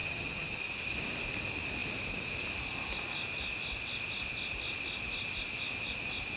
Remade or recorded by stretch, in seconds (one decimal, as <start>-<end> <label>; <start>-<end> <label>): 0.0-0.6 remade; 0.6-6.4 recorded